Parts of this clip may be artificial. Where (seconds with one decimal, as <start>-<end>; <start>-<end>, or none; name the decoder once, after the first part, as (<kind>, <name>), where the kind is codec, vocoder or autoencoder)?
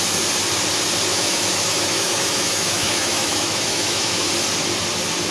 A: 1.1-4.3 (autoencoder, DAC-VAE)